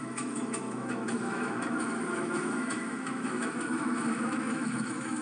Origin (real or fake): fake